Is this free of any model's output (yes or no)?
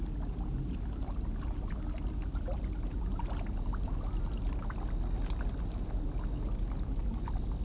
yes